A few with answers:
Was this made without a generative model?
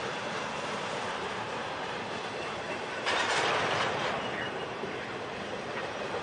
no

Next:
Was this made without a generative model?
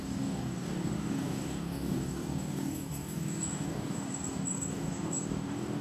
no